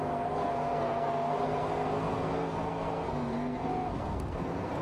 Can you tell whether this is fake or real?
fake